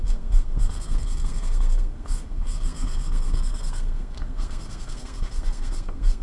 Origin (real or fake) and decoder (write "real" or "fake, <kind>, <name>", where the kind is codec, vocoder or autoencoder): fake, codec, SNAC